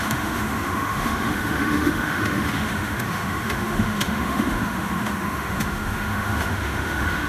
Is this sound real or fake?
fake